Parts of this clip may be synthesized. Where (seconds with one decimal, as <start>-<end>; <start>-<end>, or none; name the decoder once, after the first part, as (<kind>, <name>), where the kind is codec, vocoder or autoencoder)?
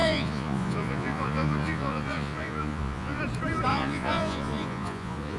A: 0.0-3.2 (vocoder, Vocos); 3.7-5.4